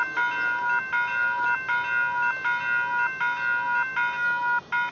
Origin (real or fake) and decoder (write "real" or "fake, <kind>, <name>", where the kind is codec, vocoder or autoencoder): real